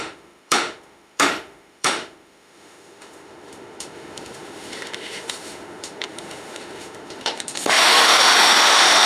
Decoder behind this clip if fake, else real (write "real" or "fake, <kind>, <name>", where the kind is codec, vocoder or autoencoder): fake, autoencoder, DAC-VAE